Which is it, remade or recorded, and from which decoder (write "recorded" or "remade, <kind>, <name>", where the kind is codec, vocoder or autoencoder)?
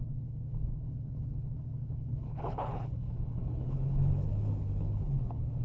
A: remade, codec, HILCodec